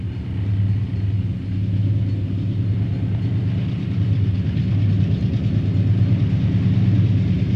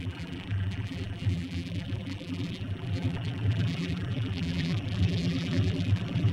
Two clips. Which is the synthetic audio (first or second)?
second